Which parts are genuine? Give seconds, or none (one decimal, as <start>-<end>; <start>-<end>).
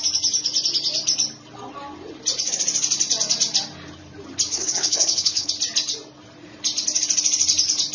0.0-4.5; 5.5-7.9